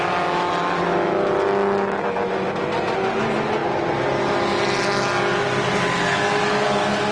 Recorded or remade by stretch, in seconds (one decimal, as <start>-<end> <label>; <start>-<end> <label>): 0.0-7.1 recorded